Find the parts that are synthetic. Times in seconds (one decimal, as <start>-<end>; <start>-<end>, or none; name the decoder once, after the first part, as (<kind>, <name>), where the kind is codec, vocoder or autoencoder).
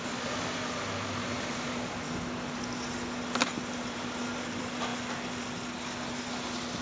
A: none